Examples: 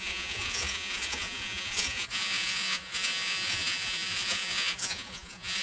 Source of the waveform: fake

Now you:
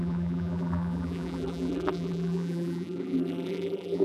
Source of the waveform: fake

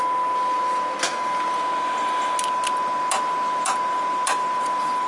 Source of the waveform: real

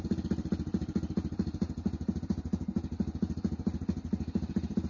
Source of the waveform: real